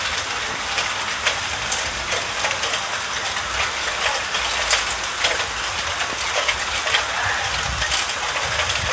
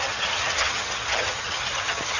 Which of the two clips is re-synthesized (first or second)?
second